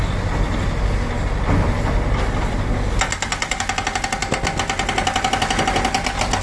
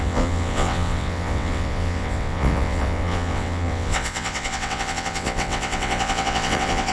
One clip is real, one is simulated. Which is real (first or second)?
first